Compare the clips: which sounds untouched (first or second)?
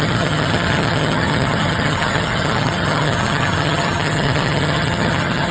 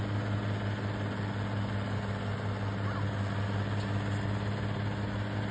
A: second